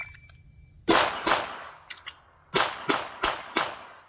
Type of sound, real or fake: real